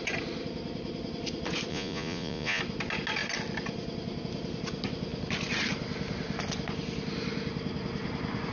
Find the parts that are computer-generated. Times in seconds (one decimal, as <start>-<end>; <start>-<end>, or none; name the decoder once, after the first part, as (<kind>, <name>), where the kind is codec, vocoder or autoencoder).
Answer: 1.7-2.6 (vocoder, Vocos)